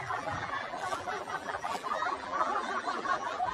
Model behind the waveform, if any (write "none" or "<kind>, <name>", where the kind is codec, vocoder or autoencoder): vocoder, BigVGAN v2